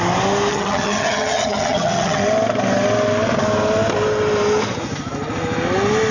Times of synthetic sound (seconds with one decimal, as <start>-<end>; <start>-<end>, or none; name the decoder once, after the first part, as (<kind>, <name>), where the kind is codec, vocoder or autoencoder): 0.5-2.2 (vocoder, HiFi-GAN)